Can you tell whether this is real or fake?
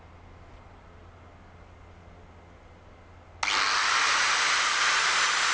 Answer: real